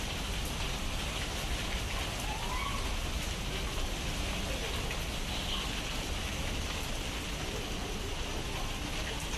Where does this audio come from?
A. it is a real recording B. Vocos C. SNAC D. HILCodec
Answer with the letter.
A